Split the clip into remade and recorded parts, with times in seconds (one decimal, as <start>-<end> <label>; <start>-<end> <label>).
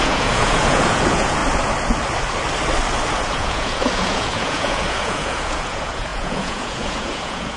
0.0-1.4 remade; 1.4-3.1 recorded; 3.1-7.6 remade